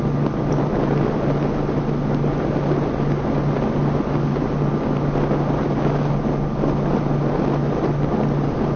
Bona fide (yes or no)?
yes